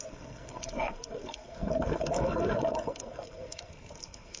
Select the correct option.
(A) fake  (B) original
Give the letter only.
A